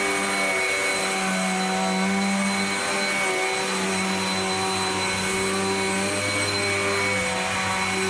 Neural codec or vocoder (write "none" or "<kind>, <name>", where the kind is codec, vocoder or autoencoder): none